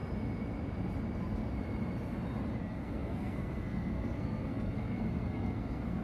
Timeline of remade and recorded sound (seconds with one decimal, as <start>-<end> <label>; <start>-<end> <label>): 0.0-2.6 recorded; 2.6-6.0 remade